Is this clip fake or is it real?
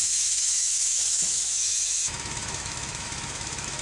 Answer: fake